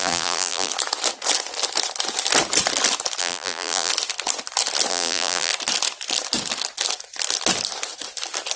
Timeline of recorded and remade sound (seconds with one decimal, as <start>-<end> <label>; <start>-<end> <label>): 0.0-0.7 remade; 0.7-3.2 recorded; 3.2-3.9 remade; 3.9-4.9 recorded; 4.9-5.5 remade; 5.5-8.6 recorded